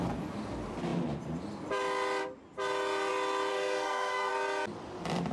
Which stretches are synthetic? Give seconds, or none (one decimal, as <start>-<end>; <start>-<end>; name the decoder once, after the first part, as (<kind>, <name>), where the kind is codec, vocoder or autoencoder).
3.5-4.3 (codec, SNAC)